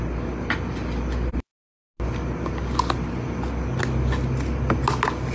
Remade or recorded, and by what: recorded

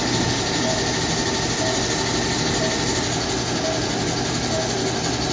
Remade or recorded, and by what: recorded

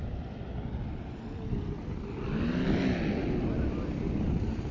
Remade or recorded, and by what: recorded